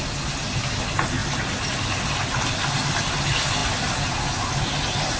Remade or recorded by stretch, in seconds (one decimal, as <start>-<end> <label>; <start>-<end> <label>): 0.0-5.2 recorded

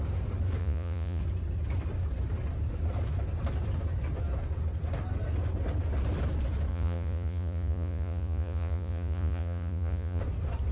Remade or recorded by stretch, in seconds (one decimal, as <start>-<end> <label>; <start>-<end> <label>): 0.0-0.6 recorded; 0.6-1.2 remade; 1.2-6.7 recorded; 6.7-10.2 remade; 10.2-10.7 recorded

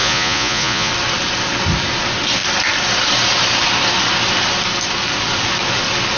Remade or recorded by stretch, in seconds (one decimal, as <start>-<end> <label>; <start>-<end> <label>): 0.0-0.9 remade; 0.9-6.2 recorded